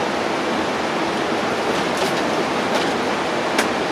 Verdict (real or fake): real